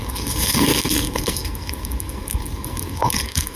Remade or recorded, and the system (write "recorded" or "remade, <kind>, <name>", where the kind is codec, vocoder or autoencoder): remade, codec, SNAC